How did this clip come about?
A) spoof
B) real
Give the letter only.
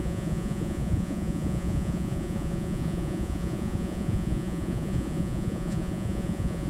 A